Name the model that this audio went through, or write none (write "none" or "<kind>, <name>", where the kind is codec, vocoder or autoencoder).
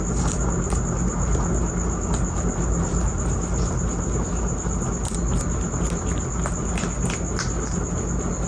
none